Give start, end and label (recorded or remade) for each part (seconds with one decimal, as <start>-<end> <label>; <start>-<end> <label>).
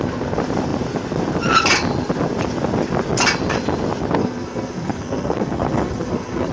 0.0-4.2 recorded; 4.2-6.5 remade